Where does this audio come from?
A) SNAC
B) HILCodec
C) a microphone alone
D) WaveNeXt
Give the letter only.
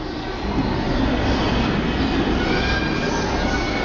C